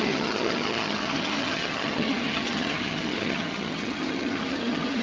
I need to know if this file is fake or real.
fake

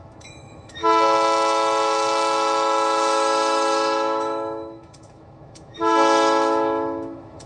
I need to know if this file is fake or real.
fake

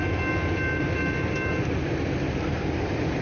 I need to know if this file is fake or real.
real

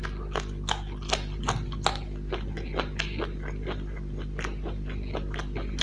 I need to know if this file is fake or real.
real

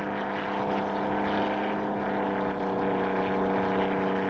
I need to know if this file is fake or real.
real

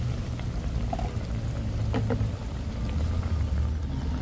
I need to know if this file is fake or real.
real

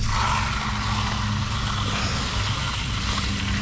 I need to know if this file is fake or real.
real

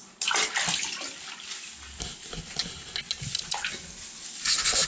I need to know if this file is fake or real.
real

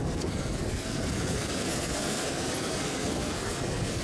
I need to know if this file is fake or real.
fake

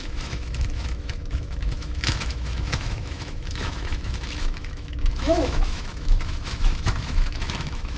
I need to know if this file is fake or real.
fake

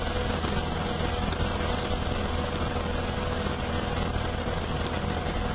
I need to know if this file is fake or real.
real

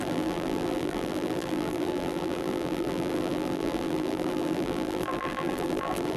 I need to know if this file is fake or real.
fake